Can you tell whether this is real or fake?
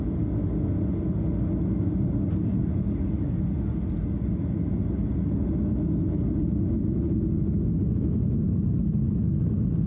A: real